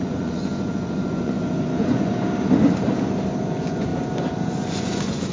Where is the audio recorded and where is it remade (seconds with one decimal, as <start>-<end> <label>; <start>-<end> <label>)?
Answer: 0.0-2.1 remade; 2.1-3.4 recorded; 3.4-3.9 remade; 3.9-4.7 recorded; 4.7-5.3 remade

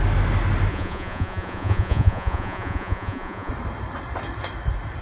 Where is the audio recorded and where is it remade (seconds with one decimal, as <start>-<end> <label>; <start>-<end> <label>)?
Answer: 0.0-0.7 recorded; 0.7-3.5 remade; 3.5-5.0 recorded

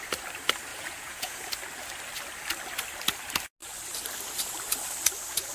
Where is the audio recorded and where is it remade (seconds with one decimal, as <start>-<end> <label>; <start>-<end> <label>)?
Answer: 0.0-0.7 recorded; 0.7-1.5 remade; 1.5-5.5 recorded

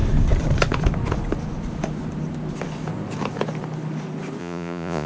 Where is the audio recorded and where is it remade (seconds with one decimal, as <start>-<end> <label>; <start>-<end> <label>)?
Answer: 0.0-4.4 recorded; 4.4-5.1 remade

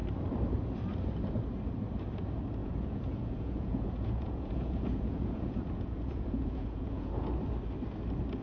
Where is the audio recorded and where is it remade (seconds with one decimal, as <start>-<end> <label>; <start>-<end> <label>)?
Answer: 0.0-2.6 recorded; 2.6-7.4 remade; 7.4-8.4 recorded